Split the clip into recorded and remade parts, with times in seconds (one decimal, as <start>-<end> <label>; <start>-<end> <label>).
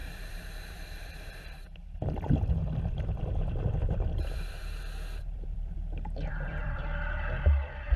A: 0.0-8.0 remade